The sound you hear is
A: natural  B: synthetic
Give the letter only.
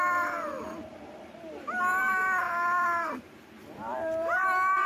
B